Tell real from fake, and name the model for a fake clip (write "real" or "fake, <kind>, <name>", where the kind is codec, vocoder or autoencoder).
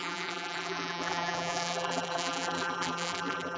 fake, vocoder, BigVGAN v2